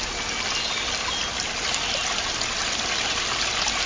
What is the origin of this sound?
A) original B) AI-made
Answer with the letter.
A